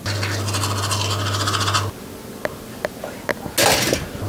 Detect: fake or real real